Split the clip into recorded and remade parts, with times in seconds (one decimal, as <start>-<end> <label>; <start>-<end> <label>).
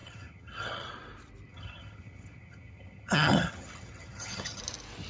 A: 0.0-0.9 remade; 0.9-1.5 recorded; 1.5-4.6 remade; 4.6-5.1 recorded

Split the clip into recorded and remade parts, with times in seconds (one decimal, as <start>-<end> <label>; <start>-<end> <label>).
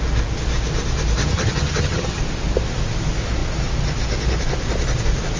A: 0.0-1.2 recorded; 1.2-2.2 remade; 2.2-5.4 recorded